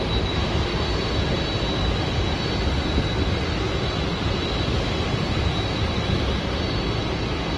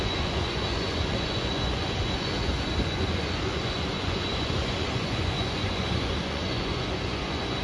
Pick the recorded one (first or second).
first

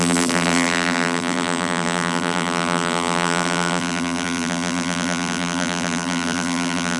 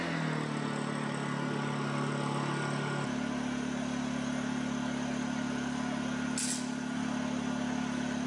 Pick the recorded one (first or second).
second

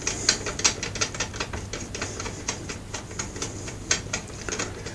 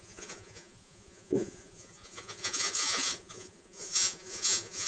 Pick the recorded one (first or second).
first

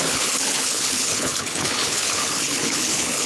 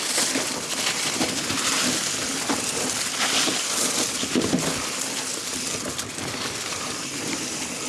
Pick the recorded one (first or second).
second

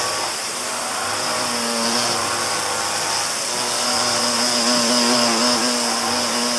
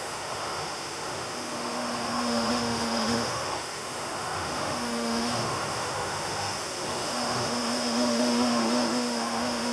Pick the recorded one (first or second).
first